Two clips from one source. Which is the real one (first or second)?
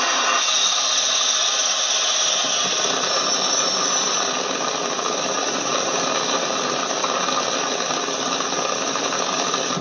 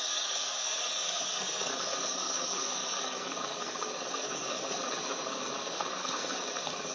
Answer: first